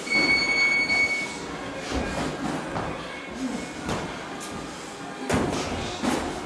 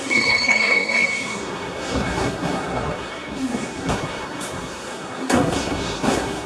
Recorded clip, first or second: first